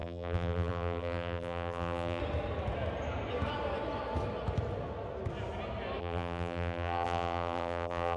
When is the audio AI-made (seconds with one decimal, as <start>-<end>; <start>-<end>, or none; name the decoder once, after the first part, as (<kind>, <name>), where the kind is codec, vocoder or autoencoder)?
0.0-2.2 (vocoder, BigVGAN v2); 6.0-8.2